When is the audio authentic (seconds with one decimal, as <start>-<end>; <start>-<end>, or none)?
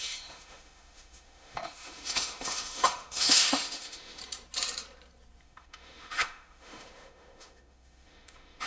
4.2-5.4